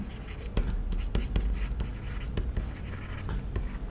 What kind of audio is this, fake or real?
real